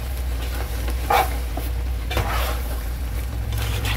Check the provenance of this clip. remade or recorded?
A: remade